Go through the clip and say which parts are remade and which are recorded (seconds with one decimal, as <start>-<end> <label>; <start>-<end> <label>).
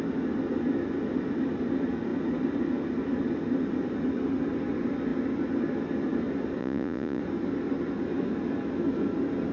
0.0-6.6 recorded; 6.6-7.2 remade; 7.2-9.5 recorded